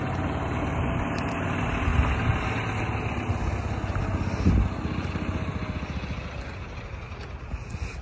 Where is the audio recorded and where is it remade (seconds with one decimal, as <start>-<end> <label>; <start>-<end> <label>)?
0.0-8.0 recorded